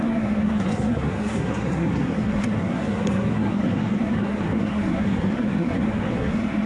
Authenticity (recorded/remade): remade